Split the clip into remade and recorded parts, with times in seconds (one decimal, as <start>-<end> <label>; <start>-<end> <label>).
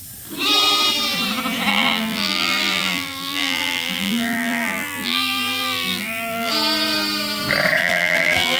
0.0-1.7 recorded; 1.7-6.5 remade; 6.5-7.8 recorded; 7.8-8.6 remade